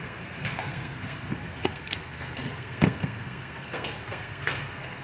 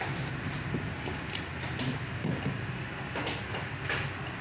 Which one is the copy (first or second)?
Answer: first